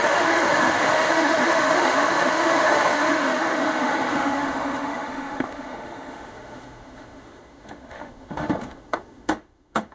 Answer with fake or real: fake